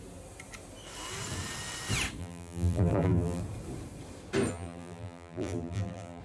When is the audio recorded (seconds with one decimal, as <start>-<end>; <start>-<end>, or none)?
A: 0.0-2.2; 3.4-4.5